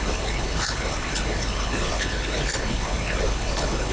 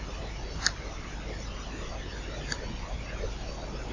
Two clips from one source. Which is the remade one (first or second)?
first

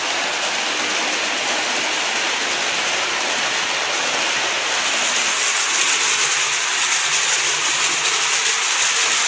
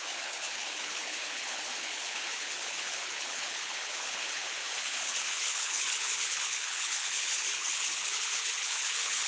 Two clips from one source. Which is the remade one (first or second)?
second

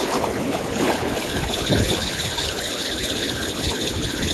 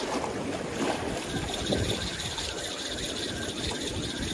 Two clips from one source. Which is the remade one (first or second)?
first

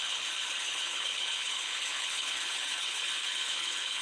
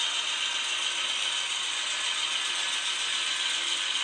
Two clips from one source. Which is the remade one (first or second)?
first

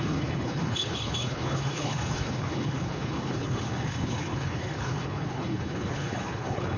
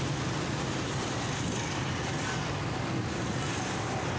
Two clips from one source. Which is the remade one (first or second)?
first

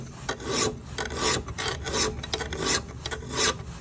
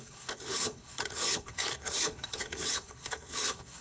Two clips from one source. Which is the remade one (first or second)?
second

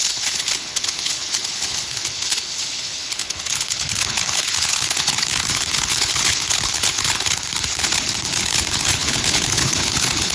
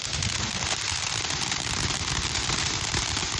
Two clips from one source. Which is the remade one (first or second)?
first